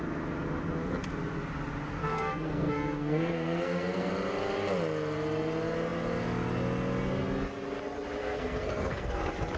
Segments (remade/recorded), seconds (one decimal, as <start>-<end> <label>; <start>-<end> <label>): 0.0-2.0 recorded; 2.0-4.1 remade; 4.1-8.2 recorded; 8.2-9.2 remade; 9.2-9.6 recorded

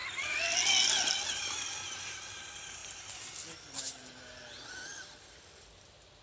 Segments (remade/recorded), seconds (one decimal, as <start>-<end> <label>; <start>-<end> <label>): 0.0-6.2 recorded

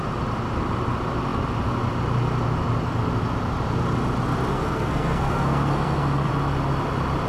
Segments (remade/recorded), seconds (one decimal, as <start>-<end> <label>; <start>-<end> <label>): 0.0-4.5 recorded; 4.5-6.3 remade; 6.3-7.3 recorded

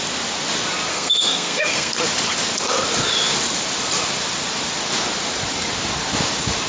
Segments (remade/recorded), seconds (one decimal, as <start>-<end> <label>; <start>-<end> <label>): 0.0-0.9 recorded; 0.9-1.9 remade; 1.9-6.7 recorded